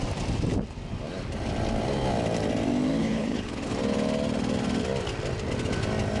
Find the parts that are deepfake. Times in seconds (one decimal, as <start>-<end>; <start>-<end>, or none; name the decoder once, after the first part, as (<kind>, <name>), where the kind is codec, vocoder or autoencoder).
3.0-3.7 (codec, HILCodec)